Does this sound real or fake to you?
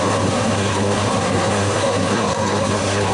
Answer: fake